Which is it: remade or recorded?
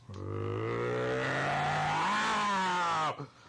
recorded